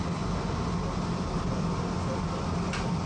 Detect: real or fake real